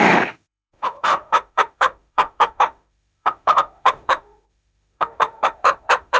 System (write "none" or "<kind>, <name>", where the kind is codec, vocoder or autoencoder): autoencoder, DAC-VAE